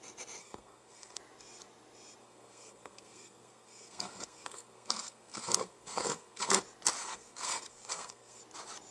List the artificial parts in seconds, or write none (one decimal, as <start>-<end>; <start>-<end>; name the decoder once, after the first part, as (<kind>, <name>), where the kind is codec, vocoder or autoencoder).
0.4-1.2 (codec, SNAC); 2.2-6.6; 7.0-8.4